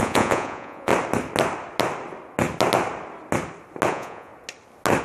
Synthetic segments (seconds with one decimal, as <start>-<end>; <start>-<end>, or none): 0.0-0.9; 3.9-4.3